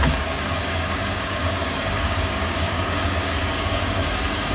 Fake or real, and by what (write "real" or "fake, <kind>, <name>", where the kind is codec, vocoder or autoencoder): fake, codec, DAC